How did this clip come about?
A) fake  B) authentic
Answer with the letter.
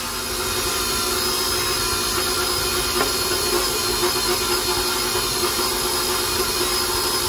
B